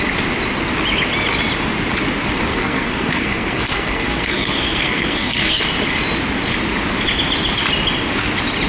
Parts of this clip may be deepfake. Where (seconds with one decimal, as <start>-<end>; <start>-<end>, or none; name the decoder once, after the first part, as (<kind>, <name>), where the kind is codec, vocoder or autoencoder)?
2.5-5.6 (codec, SNAC)